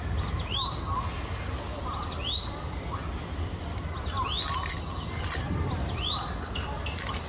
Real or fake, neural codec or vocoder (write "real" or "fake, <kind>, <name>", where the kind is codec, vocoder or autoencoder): real